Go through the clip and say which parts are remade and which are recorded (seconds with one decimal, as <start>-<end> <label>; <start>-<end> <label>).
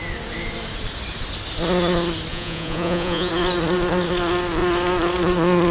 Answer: 0.0-2.3 recorded; 2.3-3.3 remade; 3.3-5.7 recorded